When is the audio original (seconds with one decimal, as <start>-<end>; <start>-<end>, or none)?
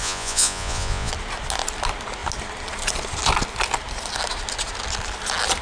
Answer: 1.1-5.6